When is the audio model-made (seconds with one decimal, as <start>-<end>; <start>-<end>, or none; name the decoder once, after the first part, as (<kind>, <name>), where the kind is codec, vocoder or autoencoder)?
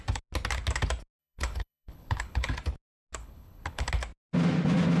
1.2-2.5 (codec, HILCodec); 3.2-3.9